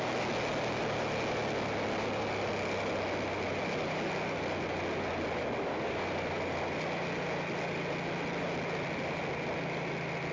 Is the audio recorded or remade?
recorded